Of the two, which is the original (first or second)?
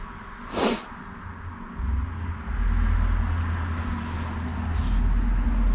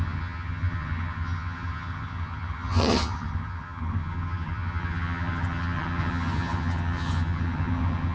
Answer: first